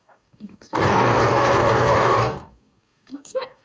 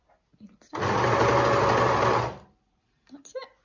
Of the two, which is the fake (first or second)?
first